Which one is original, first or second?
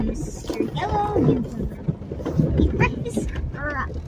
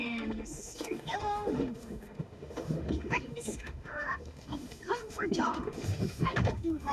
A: first